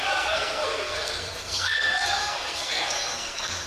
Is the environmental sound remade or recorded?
remade